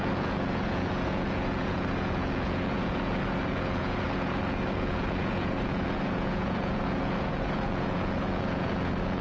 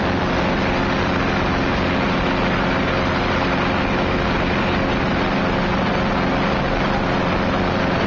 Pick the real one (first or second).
second